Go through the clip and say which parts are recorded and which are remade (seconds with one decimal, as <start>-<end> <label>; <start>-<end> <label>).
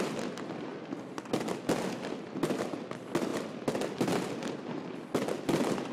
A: 0.0-5.9 recorded